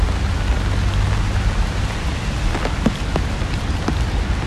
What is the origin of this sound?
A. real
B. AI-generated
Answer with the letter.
A